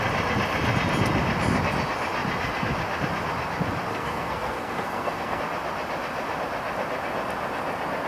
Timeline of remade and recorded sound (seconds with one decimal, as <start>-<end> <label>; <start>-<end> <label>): 0.0-3.9 recorded; 3.9-5.4 remade; 5.4-8.1 recorded